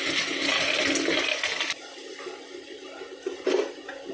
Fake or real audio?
real